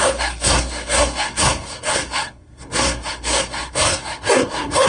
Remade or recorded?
remade